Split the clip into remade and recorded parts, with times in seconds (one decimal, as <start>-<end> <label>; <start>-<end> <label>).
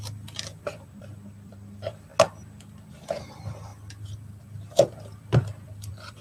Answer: 0.0-2.1 remade; 2.1-2.9 recorded; 2.9-3.7 remade; 3.7-4.4 recorded; 4.4-6.2 remade